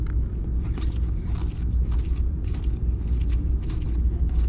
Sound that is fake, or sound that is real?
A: real